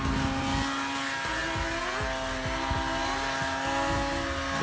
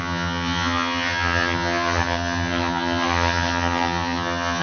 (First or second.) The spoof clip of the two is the second